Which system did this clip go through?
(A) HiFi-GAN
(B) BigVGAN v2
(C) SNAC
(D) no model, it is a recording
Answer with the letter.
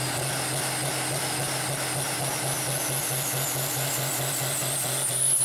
D